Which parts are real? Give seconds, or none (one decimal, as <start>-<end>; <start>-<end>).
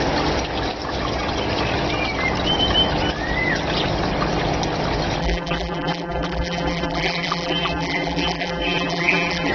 0.0-5.2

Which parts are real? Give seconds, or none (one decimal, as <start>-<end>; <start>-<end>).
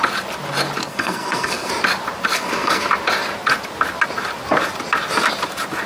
0.0-0.8; 1.7-2.3; 2.9-5.9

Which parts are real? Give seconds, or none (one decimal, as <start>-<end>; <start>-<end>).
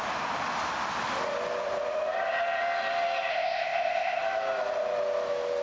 0.0-3.3; 4.2-5.6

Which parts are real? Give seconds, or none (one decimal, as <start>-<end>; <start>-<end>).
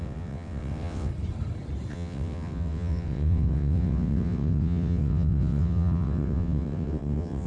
1.1-1.9